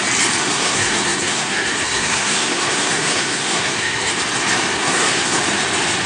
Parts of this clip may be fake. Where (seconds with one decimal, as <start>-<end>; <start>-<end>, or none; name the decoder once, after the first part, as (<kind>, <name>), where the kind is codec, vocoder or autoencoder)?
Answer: 0.4-4.1 (codec, SNAC); 4.7-5.4